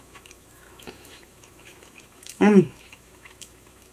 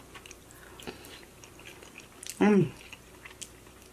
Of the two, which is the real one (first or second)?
second